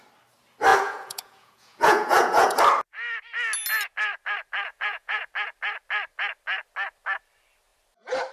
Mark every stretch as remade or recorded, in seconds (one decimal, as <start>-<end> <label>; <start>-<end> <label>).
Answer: 0.0-0.7 recorded; 0.7-2.6 remade; 2.6-4.7 recorded; 4.7-5.3 remade; 5.3-8.3 recorded